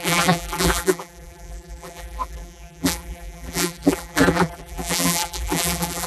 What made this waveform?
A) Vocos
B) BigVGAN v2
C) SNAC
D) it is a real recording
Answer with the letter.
B